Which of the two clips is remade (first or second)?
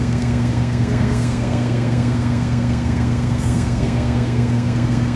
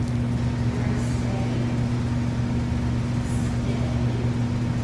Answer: first